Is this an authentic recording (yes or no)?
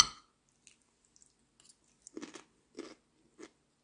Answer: yes